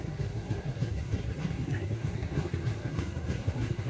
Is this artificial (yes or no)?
yes